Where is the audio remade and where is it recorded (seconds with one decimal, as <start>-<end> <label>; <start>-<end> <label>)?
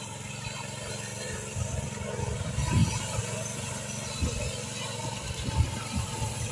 0.0-2.8 remade; 2.8-5.6 recorded; 5.6-6.5 remade